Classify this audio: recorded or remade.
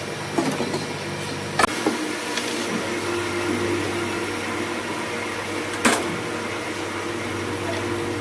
recorded